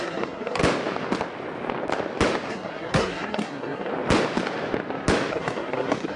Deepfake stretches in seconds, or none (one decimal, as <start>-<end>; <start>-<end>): 0.0-0.6; 2.5-3.9; 5.3-6.2